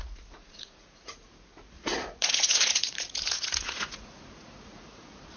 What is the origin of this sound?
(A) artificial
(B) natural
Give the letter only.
A